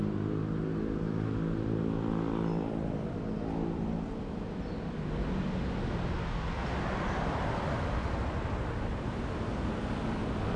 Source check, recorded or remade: recorded